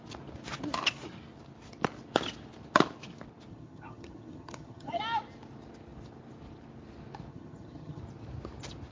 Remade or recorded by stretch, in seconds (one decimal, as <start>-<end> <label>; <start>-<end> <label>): 0.0-3.5 recorded; 3.5-5.0 remade; 5.0-7.3 recorded; 7.3-8.0 remade; 8.0-8.9 recorded